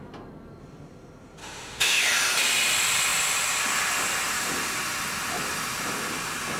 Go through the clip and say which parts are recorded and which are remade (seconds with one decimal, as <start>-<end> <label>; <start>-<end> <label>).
0.0-1.4 recorded; 1.4-2.0 remade; 2.0-6.6 recorded